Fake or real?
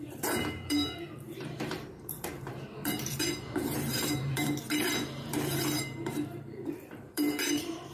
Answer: fake